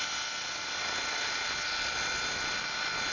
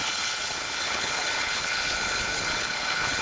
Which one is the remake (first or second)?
second